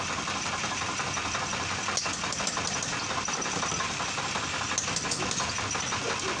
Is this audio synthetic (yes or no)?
no